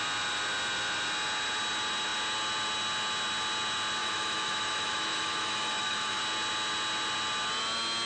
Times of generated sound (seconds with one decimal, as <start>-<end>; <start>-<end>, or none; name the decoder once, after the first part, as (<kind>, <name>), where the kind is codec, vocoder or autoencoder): 4.0-6.2 (autoencoder, DAC-VAE)